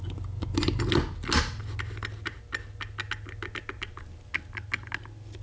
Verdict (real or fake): real